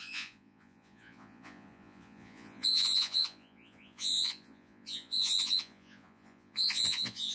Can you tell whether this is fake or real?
fake